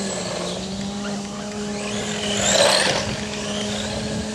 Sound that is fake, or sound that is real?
real